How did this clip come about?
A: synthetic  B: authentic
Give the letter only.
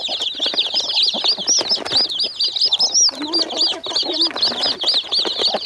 B